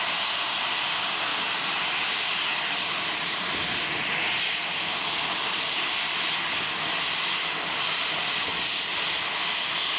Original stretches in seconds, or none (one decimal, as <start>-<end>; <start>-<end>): 0.0-1.3; 1.9-10.0